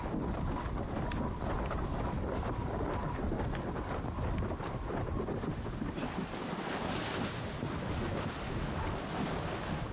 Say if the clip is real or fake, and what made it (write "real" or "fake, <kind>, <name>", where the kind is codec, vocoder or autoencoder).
real